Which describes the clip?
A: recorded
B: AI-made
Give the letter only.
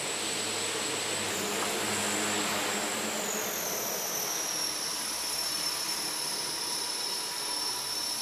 A